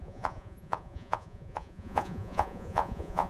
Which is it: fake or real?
fake